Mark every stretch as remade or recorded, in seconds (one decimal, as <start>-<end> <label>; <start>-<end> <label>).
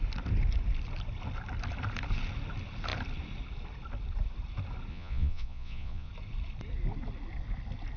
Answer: 0.0-4.9 recorded; 4.9-6.1 remade; 6.1-8.0 recorded